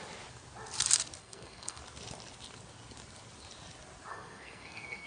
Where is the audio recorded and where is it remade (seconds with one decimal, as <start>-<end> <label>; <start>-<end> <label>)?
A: 0.0-1.2 recorded; 1.2-1.8 remade; 1.8-4.1 recorded; 4.1-5.1 remade